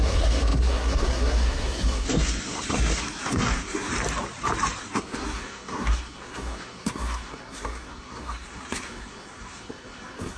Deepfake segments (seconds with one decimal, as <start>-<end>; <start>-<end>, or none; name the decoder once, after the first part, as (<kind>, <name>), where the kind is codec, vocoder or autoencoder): 0.0-3.9 (codec, SNAC); 4.8-10.4